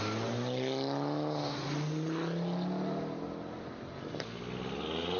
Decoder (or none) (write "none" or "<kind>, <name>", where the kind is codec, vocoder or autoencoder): none